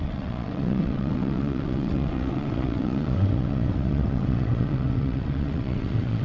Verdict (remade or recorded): remade